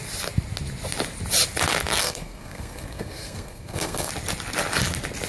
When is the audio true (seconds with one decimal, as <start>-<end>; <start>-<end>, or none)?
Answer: 0.0-2.0; 4.1-5.3